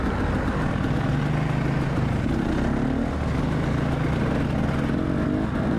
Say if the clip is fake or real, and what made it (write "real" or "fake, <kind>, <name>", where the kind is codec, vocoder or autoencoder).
real